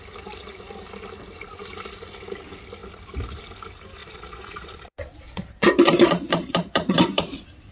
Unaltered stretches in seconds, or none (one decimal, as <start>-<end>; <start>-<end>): 0.0-4.0